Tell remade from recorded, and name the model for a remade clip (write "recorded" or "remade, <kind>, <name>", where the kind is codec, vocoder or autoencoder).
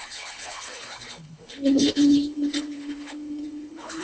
remade, codec, HILCodec